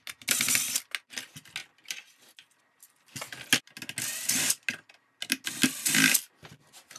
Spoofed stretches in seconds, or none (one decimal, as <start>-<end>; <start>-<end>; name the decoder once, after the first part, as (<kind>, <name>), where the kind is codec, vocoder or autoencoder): 1.6-2.6 (vocoder, BigVGAN v2)